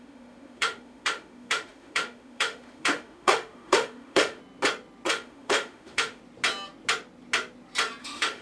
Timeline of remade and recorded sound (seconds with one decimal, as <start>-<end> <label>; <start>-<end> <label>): 0.0-4.4 remade; 4.4-5.1 recorded; 5.1-6.2 remade; 6.2-8.0 recorded; 8.0-8.4 remade